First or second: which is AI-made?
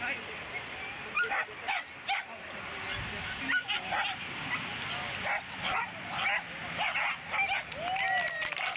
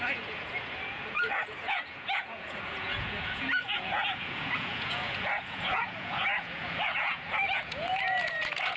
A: second